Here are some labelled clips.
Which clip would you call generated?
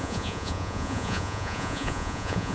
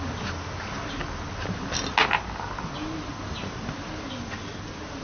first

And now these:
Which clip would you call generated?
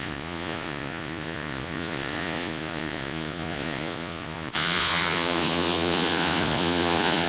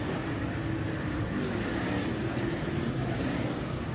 first